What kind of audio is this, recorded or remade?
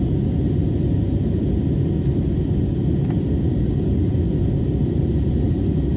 recorded